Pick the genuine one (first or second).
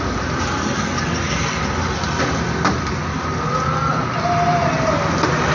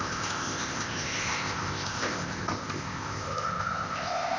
first